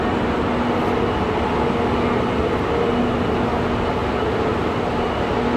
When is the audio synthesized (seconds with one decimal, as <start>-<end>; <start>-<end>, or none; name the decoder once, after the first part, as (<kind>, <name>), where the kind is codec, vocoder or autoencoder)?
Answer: none

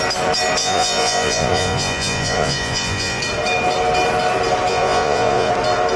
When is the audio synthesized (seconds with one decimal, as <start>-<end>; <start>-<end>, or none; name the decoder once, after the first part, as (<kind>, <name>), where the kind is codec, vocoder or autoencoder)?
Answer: 0.6-3.2 (vocoder, Vocos); 4.7-5.5